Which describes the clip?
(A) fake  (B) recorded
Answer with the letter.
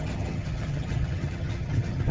A